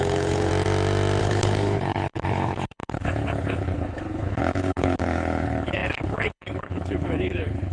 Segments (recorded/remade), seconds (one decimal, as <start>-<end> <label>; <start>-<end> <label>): 0.0-0.5 remade; 0.5-1.2 recorded; 1.2-7.7 remade